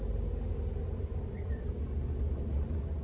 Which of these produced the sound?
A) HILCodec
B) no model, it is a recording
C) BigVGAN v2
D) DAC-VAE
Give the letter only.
B